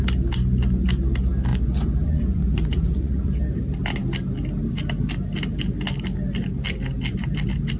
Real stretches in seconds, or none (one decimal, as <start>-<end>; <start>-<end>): 0.0-1.5; 3.3-7.8